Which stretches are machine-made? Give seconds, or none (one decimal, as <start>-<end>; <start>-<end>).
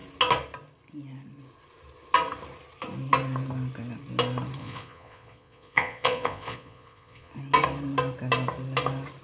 4.6-7.3